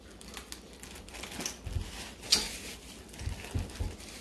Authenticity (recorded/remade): recorded